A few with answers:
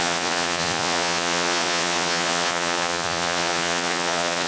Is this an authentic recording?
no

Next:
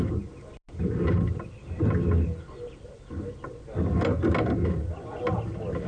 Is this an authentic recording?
yes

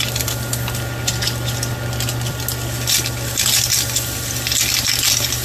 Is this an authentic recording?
yes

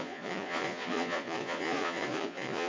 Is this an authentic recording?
no